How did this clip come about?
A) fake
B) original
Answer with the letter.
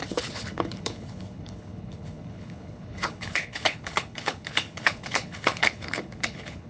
A